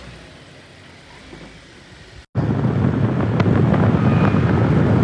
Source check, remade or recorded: recorded